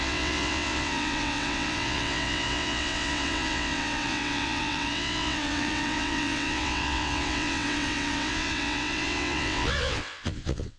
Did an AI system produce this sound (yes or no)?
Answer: yes